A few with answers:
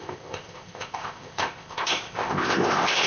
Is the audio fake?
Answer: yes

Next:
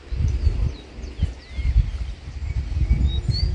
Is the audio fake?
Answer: no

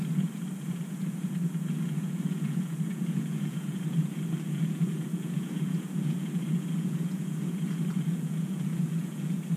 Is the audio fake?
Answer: yes